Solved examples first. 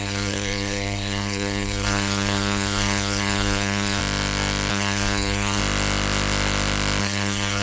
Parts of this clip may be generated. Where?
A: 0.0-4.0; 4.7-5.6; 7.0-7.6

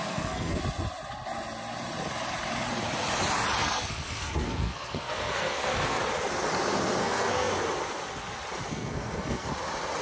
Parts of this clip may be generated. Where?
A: 0.0-0.6; 3.6-6.0; 7.0-7.5; 8.7-9.5

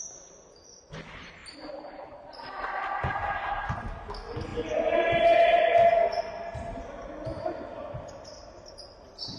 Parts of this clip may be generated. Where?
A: none